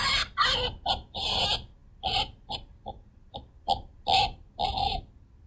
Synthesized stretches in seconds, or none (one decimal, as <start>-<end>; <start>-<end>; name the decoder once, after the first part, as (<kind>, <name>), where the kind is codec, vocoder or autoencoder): none